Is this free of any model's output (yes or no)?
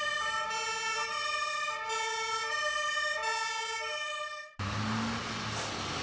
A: yes